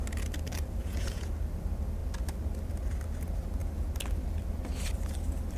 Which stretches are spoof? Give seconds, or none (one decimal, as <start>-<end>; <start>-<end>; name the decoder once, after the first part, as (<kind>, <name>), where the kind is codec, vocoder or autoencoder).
0.8-1.3 (vocoder, Vocos)

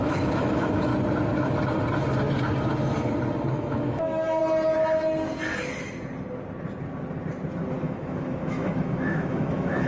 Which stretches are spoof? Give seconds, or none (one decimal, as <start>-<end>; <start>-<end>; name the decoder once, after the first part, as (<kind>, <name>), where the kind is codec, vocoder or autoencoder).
0.0-0.9 (autoencoder, DAC-VAE); 3.5-4.4; 7.8-9.9

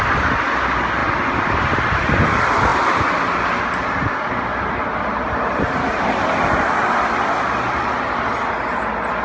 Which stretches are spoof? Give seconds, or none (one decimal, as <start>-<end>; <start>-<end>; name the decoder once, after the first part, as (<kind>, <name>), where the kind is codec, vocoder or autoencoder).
none

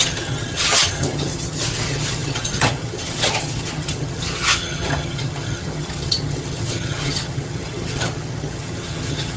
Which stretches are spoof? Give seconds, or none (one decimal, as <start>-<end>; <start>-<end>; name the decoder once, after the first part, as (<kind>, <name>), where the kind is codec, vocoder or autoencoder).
0.0-9.4 (vocoder, HiFi-GAN)

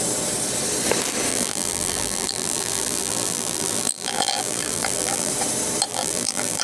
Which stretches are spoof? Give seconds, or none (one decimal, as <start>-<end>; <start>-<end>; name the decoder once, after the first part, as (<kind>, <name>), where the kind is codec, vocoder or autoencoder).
1.3-5.3 (vocoder, BigVGAN v2); 5.9-6.6

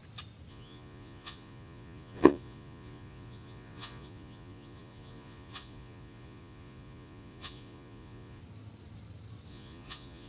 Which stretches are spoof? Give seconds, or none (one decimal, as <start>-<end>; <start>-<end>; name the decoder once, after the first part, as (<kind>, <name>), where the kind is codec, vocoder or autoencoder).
0.5-8.4 (vocoder, Vocos); 9.5-10.3

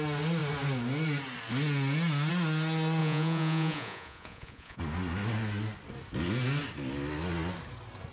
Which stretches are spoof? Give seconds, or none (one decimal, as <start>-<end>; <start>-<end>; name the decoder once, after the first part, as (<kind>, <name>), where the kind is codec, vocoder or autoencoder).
3.0-4.8 (vocoder, Vocos)